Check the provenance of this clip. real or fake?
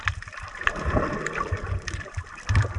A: fake